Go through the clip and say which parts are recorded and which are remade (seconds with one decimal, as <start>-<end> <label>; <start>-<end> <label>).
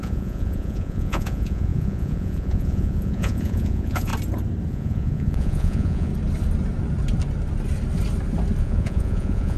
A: 0.0-4.1 remade; 4.1-4.7 recorded; 4.7-6.1 remade; 6.1-8.6 recorded; 8.6-9.6 remade